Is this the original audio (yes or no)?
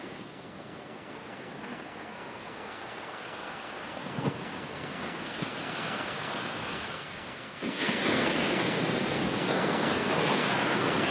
no